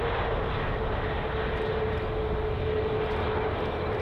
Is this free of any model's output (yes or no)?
yes